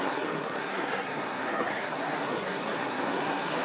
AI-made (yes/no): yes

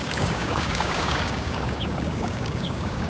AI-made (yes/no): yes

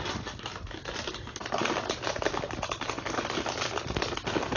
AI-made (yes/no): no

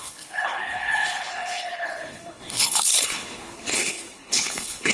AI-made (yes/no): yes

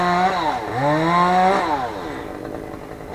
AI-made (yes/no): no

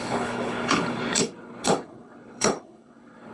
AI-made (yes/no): yes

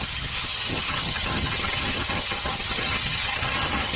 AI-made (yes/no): yes